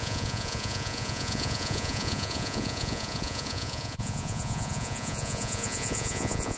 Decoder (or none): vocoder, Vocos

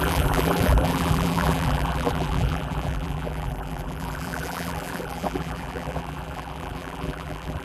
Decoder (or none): vocoder, BigVGAN v2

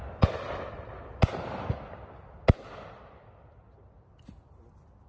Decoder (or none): none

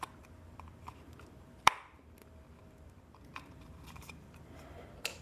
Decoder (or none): vocoder, BigVGAN v2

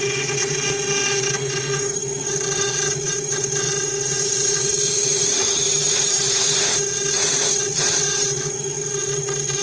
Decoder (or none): vocoder, WaveNeXt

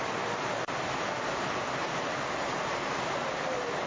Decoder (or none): none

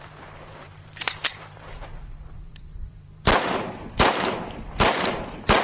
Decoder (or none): vocoder, BigVGAN v2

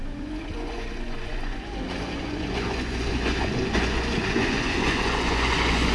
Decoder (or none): vocoder, Vocos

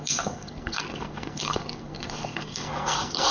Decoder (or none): codec, SNAC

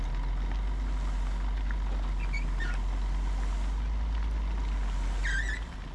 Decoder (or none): none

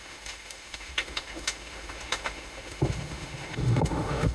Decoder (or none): autoencoder, DAC-VAE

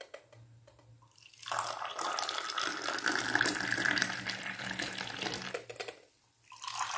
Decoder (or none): none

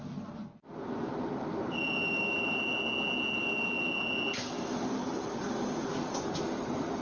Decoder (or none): none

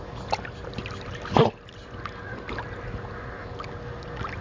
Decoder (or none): none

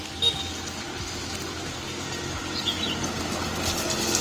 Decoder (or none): none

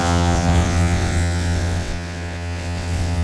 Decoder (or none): vocoder, WaveNeXt